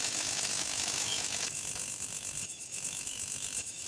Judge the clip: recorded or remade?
remade